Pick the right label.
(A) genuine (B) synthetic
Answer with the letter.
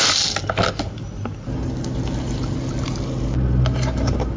A